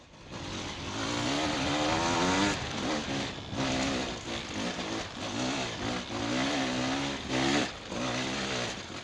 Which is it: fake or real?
real